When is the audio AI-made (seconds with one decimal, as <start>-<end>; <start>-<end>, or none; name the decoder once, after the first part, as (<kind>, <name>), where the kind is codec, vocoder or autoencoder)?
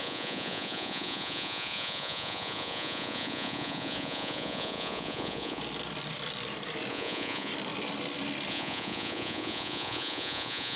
0.0-5.6 (vocoder, Vocos); 6.9-7.5; 8.5-10.8